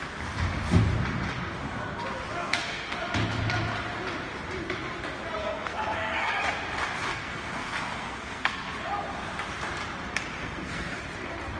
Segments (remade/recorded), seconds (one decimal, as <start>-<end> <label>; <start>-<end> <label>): 0.0-2.4 recorded; 2.4-3.0 remade; 3.0-5.4 recorded; 5.4-6.4 remade; 6.4-7.1 recorded; 7.1-8.7 remade; 8.7-10.3 recorded; 10.3-11.0 remade; 11.0-11.6 recorded